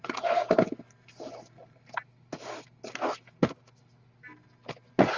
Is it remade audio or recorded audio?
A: recorded